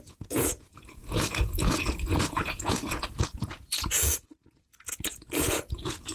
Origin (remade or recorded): remade